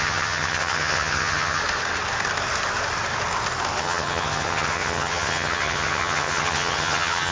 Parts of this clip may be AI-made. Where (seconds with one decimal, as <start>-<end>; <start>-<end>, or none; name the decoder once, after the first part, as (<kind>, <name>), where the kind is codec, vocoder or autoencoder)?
0.0-1.6 (vocoder, HiFi-GAN); 3.8-7.3